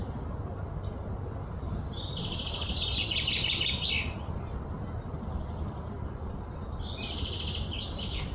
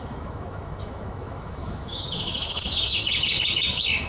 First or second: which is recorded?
first